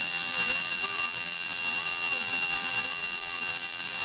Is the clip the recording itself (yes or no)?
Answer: no